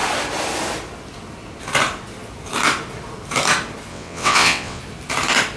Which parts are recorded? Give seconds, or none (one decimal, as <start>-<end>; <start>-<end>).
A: 0.0-3.9; 4.8-5.6